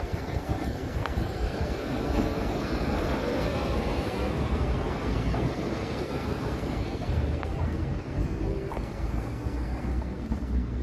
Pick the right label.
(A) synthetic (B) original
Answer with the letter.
A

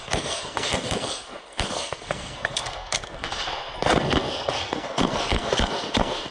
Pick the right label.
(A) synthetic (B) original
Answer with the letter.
A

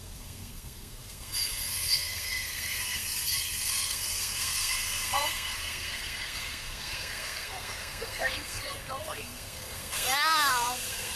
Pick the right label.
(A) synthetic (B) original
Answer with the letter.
A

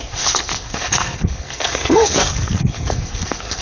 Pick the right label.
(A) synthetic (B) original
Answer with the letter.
A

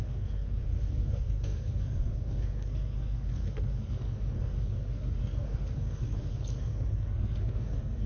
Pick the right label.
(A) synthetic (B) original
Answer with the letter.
A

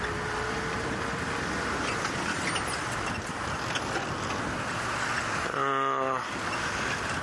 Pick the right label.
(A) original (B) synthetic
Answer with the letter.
A